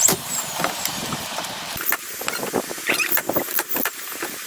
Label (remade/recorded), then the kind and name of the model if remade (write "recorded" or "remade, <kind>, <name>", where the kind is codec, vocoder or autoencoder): remade, vocoder, BigVGAN v2